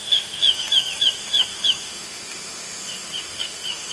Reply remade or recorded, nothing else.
remade